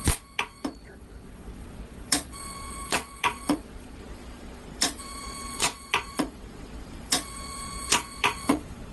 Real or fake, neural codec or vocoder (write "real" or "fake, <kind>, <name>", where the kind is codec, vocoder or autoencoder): fake, vocoder, Vocos